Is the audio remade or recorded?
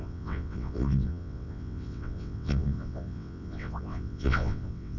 remade